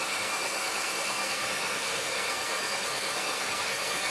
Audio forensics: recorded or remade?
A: remade